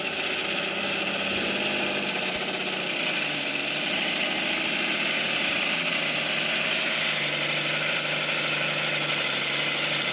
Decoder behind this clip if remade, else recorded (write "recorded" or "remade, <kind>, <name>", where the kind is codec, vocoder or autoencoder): recorded